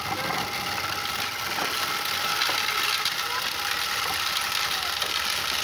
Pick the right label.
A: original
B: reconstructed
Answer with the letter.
A